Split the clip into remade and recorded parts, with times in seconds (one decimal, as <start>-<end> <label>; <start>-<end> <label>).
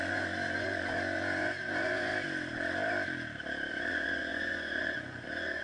0.0-2.1 remade; 2.1-3.7 recorded; 3.7-5.6 remade